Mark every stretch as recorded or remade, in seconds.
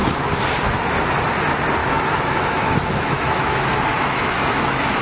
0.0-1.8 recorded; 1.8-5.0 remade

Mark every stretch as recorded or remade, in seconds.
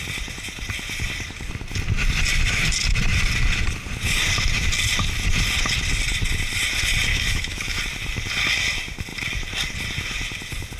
0.0-7.1 recorded; 7.1-7.8 remade; 7.8-10.8 recorded